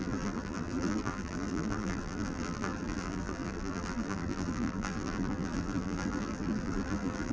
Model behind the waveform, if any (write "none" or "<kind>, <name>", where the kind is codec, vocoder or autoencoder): vocoder, BigVGAN v2